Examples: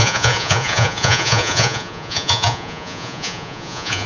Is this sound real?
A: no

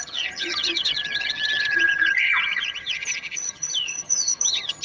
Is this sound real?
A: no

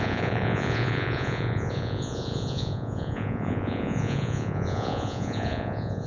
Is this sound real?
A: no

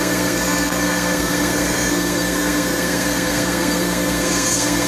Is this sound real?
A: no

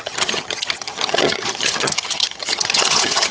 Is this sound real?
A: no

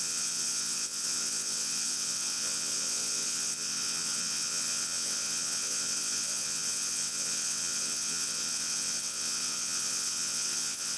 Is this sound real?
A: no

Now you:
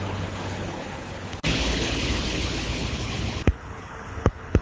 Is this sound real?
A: no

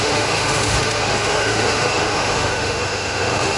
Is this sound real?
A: no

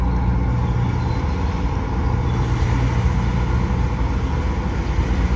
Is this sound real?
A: yes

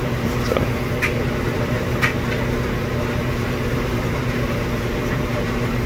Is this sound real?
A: no